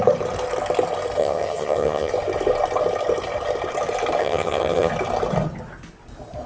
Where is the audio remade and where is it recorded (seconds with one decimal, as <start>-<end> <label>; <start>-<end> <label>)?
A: 0.0-1.2 recorded; 1.2-2.1 remade; 2.1-4.2 recorded; 4.2-4.9 remade; 4.9-6.5 recorded